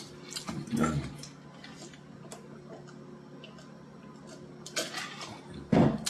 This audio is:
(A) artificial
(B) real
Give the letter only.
B